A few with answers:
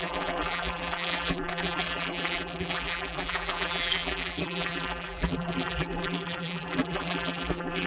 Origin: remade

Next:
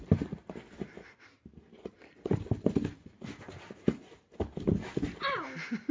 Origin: recorded